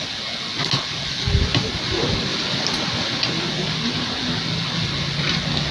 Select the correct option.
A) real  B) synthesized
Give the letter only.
A